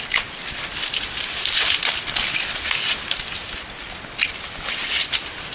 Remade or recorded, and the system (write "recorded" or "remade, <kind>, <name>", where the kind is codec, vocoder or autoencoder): remade, vocoder, BigVGAN v2